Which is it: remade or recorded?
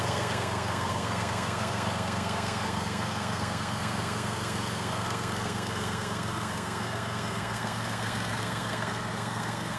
remade